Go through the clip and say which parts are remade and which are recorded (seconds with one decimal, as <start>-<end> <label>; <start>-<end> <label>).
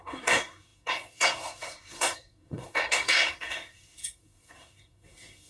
0.0-5.5 remade